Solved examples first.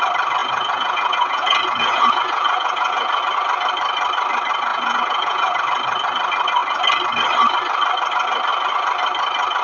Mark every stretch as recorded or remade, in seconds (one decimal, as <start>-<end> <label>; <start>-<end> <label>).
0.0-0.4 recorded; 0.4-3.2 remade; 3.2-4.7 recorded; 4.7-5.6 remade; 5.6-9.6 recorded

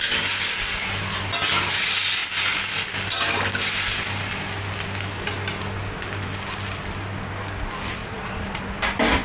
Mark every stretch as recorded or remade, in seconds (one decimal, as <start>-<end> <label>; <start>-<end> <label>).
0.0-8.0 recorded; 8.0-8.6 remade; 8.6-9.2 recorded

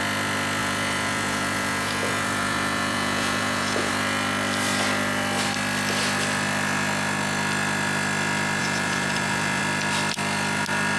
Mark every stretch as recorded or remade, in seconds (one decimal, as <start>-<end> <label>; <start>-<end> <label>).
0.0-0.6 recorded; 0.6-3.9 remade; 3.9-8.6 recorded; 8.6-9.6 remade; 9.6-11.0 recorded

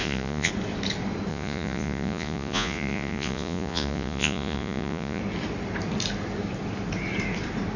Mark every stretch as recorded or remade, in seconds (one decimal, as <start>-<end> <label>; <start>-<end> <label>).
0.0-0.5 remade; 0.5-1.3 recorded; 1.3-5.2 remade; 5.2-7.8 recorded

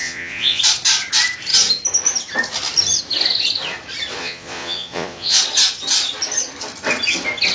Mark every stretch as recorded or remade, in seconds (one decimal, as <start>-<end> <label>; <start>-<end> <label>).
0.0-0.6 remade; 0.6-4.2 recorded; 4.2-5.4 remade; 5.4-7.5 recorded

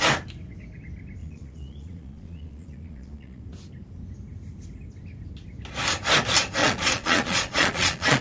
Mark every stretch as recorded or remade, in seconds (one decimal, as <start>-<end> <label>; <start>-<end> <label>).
0.0-1.2 recorded; 1.2-3.4 remade; 3.4-6.6 recorded; 6.6-8.2 remade